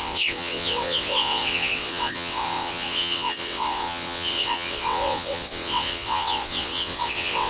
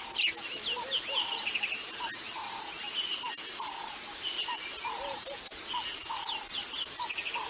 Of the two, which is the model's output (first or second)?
first